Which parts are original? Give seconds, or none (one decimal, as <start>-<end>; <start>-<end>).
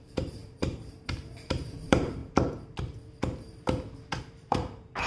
2.2-4.2